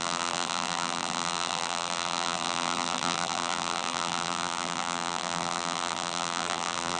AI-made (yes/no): yes